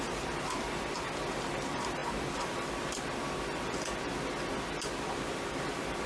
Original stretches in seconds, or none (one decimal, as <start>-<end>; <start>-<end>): 0.0-6.1